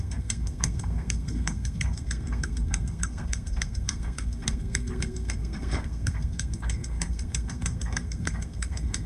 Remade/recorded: remade